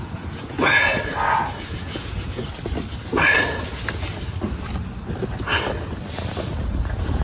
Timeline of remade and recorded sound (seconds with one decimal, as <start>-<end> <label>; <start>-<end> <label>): 0.0-0.9 remade; 0.9-1.5 recorded; 1.5-2.4 remade; 2.4-6.6 recorded; 6.6-7.2 remade